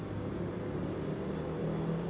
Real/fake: real